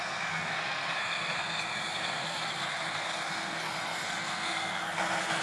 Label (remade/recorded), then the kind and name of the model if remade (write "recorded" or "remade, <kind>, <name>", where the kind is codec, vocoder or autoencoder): remade, codec, SNAC